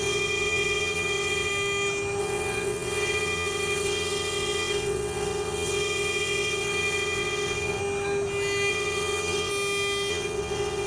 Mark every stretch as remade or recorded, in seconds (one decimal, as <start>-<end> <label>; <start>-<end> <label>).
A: 0.0-1.5 remade; 1.5-2.2 recorded; 2.2-7.8 remade; 7.8-8.7 recorded; 8.7-9.5 remade; 9.5-10.1 recorded; 10.1-10.9 remade